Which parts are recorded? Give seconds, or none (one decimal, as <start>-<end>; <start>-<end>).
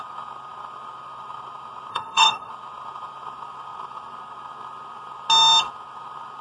0.0-1.9; 2.5-6.4